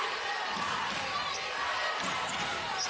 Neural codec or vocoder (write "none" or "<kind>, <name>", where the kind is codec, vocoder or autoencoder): none